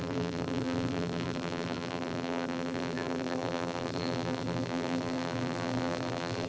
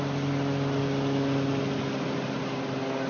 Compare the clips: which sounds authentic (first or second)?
second